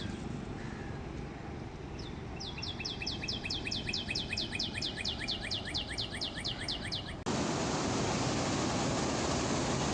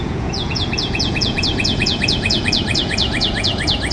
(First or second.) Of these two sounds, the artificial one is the second